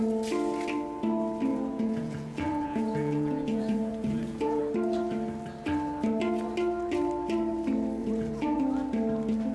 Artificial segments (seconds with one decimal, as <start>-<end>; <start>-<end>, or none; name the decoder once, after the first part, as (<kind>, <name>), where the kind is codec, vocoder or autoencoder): 1.5-4.6 (vocoder, Vocos); 8.0-8.6